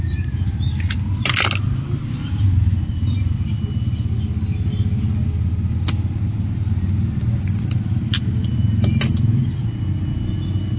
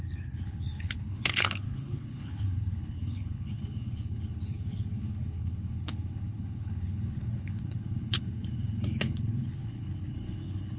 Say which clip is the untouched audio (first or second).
first